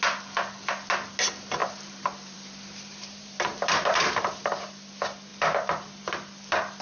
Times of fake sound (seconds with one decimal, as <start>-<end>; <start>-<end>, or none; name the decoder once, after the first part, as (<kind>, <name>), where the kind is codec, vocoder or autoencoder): 1.6-4.6 (vocoder, BigVGAN v2); 5.3-6.0